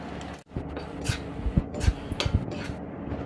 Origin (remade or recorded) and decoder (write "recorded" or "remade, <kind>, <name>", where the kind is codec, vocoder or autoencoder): recorded